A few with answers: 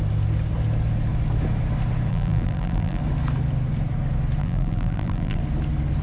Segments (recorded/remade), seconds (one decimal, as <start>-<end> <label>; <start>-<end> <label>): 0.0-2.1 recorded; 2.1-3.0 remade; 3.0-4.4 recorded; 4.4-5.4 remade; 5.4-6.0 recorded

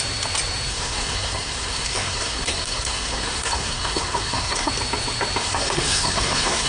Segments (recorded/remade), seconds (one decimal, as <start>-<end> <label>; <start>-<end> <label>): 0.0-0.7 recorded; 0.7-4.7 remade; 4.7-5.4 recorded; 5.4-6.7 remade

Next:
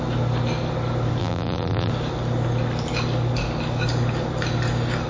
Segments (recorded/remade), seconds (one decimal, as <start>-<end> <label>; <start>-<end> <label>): 0.0-1.2 recorded; 1.2-1.9 remade; 1.9-5.1 recorded